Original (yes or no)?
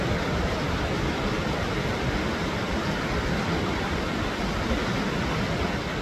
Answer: yes